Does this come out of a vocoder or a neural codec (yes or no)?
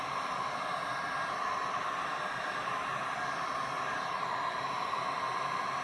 no